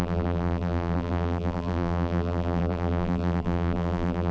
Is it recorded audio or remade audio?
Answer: remade